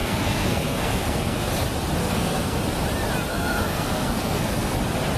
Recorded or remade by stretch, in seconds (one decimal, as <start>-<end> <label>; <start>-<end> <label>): 0.0-1.5 remade; 1.5-2.0 recorded; 2.0-2.6 remade; 2.6-3.3 recorded; 3.3-4.8 remade; 4.8-5.2 recorded